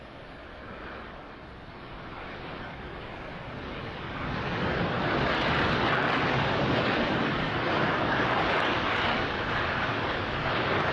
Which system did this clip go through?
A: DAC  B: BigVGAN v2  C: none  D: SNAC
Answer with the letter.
A